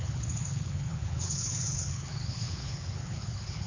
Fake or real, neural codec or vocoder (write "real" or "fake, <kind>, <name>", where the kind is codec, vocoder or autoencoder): fake, codec, HILCodec